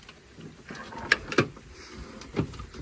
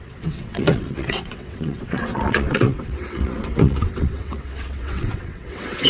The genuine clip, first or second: first